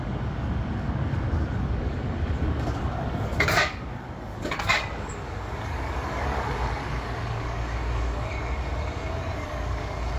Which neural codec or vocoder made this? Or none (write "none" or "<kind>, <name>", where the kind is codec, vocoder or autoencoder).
codec, DAC